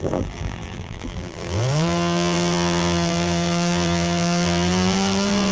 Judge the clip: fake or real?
fake